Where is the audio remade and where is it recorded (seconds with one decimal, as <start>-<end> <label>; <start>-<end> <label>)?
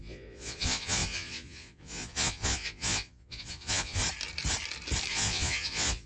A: 0.0-4.0 remade; 4.0-5.1 recorded; 5.1-6.1 remade